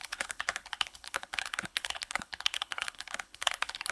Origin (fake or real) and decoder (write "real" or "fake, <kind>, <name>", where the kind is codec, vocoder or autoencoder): fake, codec, HILCodec